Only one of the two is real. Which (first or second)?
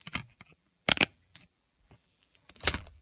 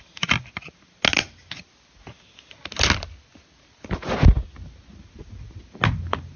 second